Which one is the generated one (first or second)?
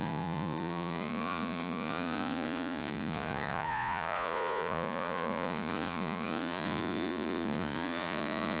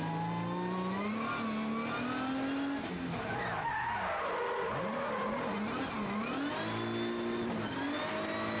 first